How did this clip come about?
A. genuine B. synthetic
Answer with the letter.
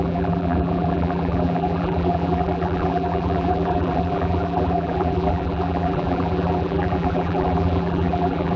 B